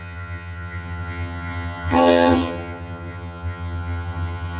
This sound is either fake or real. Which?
fake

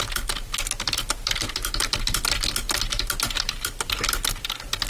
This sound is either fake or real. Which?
real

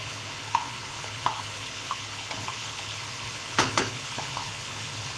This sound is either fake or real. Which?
fake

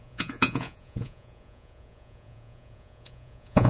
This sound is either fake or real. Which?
fake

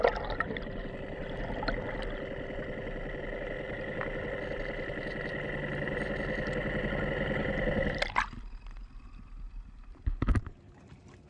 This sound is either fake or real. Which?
real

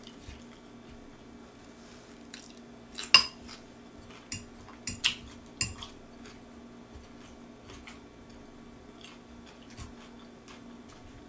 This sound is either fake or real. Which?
real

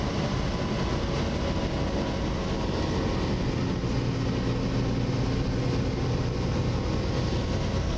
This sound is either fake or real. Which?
real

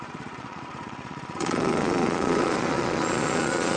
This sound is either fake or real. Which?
fake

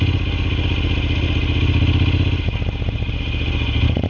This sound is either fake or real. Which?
real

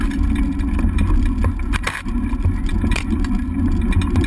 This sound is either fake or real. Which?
real